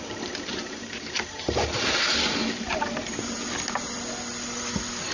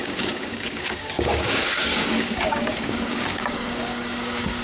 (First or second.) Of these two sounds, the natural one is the first